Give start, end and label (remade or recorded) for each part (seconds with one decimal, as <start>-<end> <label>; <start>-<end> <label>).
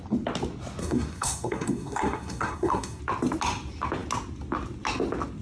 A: 0.0-0.8 recorded; 0.8-3.0 remade; 3.0-5.4 recorded